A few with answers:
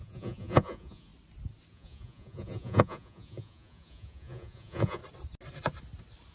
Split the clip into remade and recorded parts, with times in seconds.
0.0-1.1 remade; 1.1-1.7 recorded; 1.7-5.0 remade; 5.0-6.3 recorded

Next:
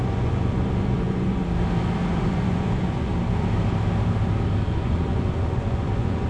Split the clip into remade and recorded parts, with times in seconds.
0.0-1.4 remade; 1.4-2.2 recorded; 2.2-3.1 remade; 3.1-4.6 recorded; 4.6-6.3 remade

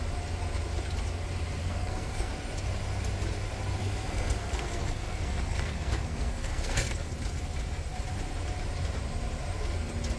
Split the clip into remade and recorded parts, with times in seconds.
0.0-1.6 recorded; 1.6-2.3 remade; 2.3-3.8 recorded; 3.8-7.1 remade; 7.1-10.2 recorded

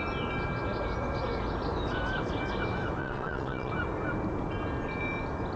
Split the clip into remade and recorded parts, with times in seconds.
0.0-3.0 recorded; 3.0-3.7 remade; 3.7-5.6 recorded